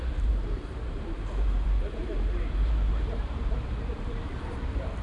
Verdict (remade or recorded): remade